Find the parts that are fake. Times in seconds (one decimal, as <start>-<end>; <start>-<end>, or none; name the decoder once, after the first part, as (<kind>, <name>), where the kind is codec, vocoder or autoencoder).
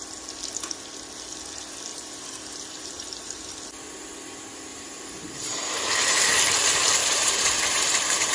1.9-3.5 (vocoder, BigVGAN v2); 4.7-5.7; 7.0-8.3